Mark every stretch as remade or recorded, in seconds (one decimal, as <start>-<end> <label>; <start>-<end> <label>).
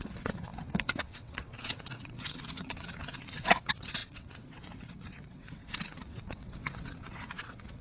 0.0-7.8 remade